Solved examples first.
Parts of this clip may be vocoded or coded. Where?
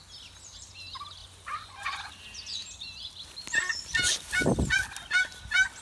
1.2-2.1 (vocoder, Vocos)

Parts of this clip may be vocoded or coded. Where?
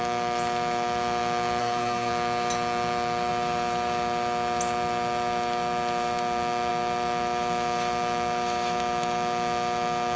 1.6-2.1 (codec, SNAC)